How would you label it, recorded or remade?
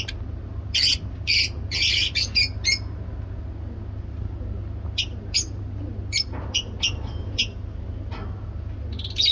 recorded